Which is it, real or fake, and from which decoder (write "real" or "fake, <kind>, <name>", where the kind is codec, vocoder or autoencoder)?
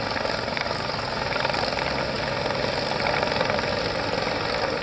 real